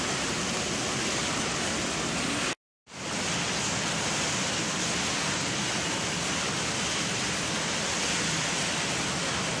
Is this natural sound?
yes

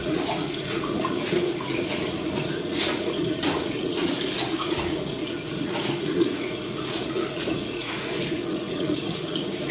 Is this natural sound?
no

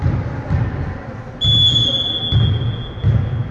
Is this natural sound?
yes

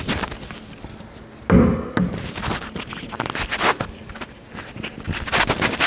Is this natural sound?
yes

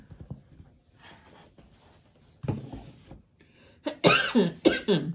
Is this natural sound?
yes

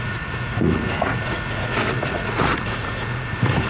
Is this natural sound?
no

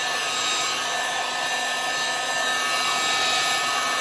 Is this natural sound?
yes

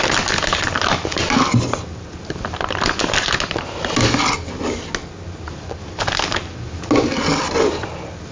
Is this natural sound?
yes